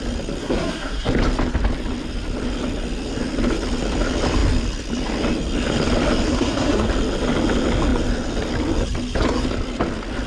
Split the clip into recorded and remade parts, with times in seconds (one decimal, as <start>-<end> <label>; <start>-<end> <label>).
0.0-0.4 recorded; 0.4-1.1 remade; 1.1-6.3 recorded; 6.3-6.9 remade; 6.9-10.3 recorded